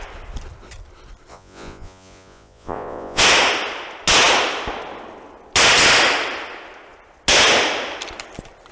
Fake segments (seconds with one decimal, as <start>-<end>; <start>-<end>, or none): 1.3-3.2